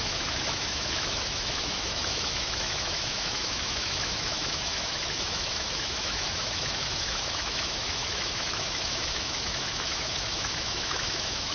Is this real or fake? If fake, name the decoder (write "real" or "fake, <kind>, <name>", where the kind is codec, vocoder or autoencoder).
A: fake, autoencoder, DAC-VAE